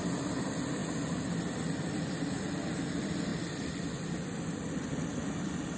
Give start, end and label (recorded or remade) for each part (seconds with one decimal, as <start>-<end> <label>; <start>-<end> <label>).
0.0-0.8 remade; 0.8-1.4 recorded; 1.4-5.8 remade